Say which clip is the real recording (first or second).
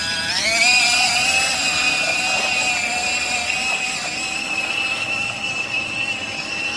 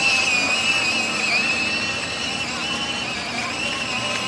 second